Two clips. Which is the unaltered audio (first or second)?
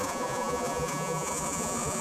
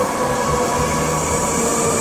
second